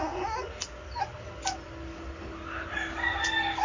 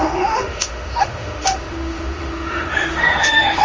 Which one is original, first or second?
first